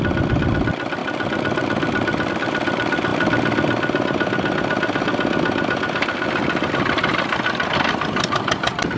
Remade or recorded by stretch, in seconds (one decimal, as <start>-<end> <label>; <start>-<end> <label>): 0.0-3.1 remade; 3.1-6.7 recorded; 6.7-9.0 remade